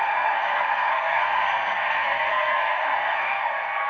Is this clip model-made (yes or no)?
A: yes